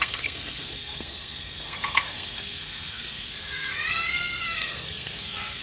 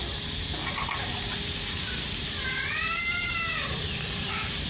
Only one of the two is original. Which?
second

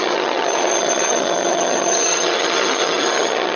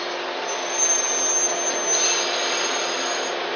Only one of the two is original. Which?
second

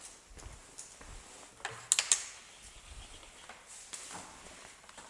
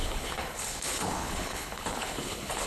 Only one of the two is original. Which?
first